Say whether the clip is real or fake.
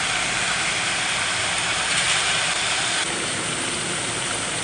fake